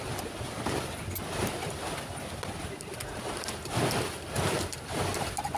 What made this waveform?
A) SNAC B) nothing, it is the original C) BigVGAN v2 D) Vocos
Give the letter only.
B